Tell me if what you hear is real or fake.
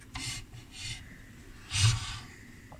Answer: fake